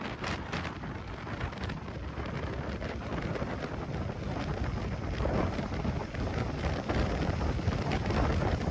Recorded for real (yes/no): no